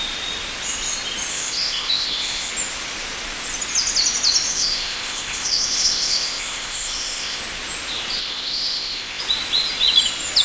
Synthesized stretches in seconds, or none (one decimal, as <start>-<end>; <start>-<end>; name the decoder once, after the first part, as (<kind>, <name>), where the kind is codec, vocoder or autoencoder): 1.3-2.5 (codec, ZipCodec); 4.5-7.4; 8.2-9.2